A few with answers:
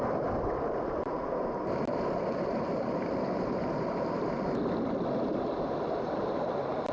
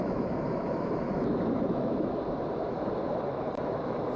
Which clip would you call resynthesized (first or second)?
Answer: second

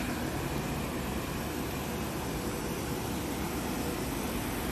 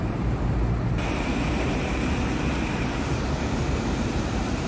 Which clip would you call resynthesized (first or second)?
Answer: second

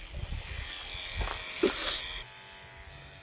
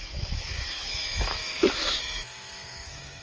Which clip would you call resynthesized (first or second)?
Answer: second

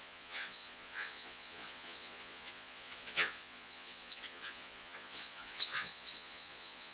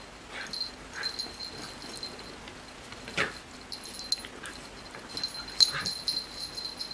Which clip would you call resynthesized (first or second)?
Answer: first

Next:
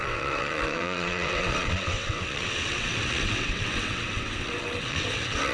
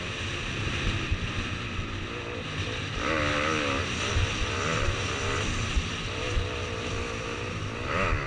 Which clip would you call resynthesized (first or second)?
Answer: first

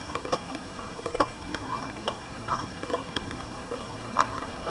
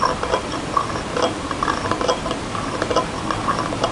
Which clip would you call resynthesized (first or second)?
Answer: first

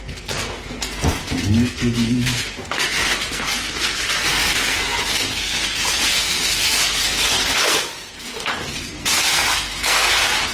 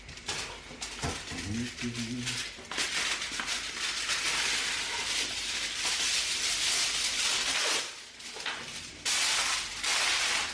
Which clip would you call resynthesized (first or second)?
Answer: first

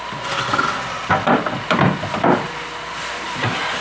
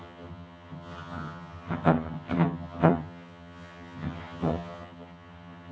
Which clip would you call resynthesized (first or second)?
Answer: second